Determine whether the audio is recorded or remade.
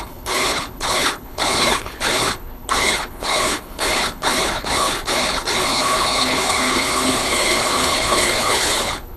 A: remade